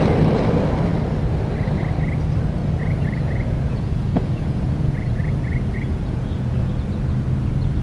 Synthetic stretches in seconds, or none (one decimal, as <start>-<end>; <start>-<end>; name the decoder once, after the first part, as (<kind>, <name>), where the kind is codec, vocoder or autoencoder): 2.6-6.7 (vocoder, Vocos)

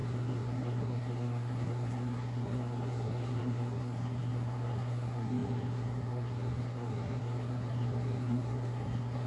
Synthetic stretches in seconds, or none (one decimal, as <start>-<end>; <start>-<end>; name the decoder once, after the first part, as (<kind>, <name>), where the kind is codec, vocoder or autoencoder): 0.0-9.3 (codec, SNAC)

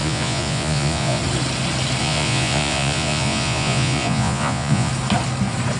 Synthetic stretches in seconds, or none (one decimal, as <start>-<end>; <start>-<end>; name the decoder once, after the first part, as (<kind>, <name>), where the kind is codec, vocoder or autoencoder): 0.0-1.2 (vocoder, Vocos); 2.0-4.9